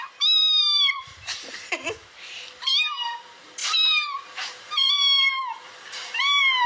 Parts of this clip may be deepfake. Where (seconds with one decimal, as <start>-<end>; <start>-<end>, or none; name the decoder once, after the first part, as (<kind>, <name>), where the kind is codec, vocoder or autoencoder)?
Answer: 0.0-6.7 (vocoder, BigVGAN v2)